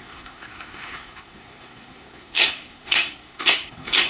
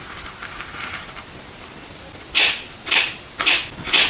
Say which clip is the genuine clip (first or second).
second